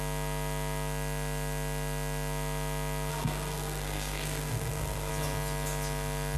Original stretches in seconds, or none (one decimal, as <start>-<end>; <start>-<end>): 0.0-3.1; 5.1-6.4